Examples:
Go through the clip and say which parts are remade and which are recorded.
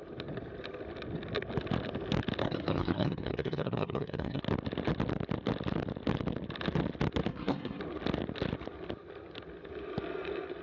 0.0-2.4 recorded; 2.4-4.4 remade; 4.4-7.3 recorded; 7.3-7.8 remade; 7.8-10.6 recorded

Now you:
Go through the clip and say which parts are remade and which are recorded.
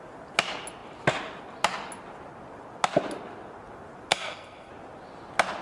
0.0-4.1 recorded; 4.1-4.7 remade; 4.7-5.6 recorded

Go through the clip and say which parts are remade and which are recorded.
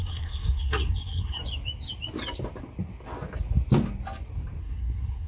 0.0-1.4 remade; 1.4-4.6 recorded; 4.6-5.3 remade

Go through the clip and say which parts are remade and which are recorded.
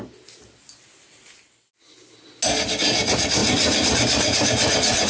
0.0-5.1 recorded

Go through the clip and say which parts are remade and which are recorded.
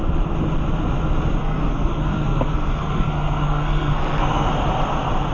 0.0-1.4 recorded; 1.4-4.5 remade; 4.5-5.3 recorded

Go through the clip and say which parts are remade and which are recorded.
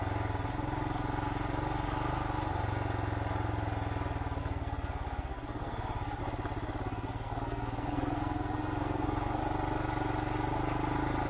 0.0-4.4 recorded; 4.4-6.2 remade; 6.2-6.9 recorded; 6.9-9.4 remade; 9.4-11.3 recorded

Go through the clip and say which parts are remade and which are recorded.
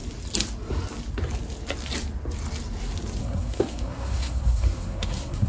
0.0-3.2 recorded; 3.2-5.5 remade